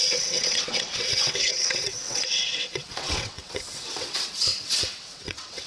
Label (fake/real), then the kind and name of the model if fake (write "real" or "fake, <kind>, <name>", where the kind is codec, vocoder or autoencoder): fake, vocoder, WaveNeXt